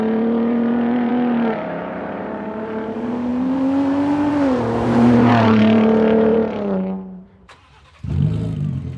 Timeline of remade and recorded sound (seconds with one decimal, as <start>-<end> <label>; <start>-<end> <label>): 0.0-9.0 remade